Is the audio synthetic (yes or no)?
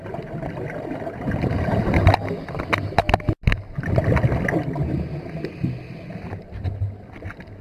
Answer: no